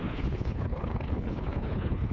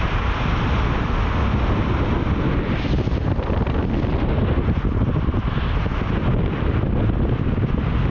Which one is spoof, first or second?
first